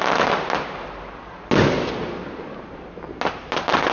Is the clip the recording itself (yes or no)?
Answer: yes